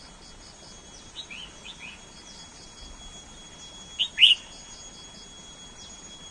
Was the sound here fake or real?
real